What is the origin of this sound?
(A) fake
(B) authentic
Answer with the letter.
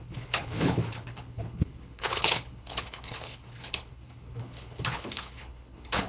A